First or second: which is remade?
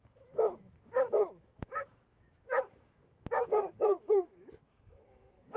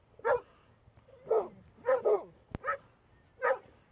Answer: first